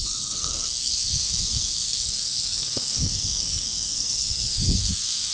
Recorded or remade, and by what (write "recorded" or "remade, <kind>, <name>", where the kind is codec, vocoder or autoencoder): remade, codec, SNAC